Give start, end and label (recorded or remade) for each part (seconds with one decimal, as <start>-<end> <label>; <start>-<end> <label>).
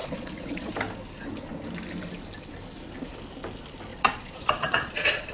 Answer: 0.0-0.7 remade; 0.7-3.9 recorded; 3.9-5.3 remade